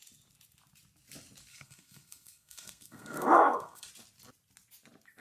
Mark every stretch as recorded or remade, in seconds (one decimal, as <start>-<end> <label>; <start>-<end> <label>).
0.0-1.5 recorded; 1.5-3.9 remade; 3.9-5.2 recorded